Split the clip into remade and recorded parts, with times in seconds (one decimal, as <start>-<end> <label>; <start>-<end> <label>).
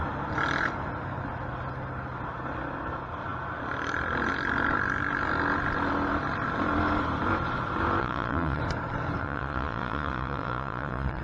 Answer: 0.0-8.0 recorded; 8.0-8.6 remade; 8.6-9.2 recorded; 9.2-11.2 remade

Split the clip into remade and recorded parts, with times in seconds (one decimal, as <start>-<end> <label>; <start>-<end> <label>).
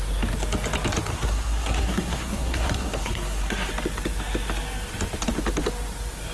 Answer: 0.0-1.1 recorded; 1.1-3.7 remade; 3.7-6.3 recorded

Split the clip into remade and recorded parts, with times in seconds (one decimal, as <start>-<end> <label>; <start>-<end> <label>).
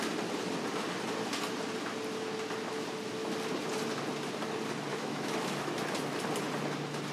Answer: 0.0-4.9 recorded; 4.9-5.7 remade; 5.7-7.1 recorded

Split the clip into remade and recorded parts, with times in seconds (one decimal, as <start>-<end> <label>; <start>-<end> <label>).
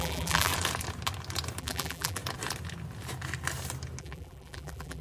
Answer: 0.0-0.5 remade; 0.5-1.6 recorded; 1.6-2.2 remade; 2.2-4.0 recorded; 4.0-5.0 remade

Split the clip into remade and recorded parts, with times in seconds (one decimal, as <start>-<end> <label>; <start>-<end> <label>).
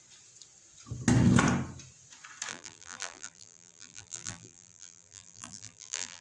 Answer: 0.0-2.5 recorded; 2.5-6.2 remade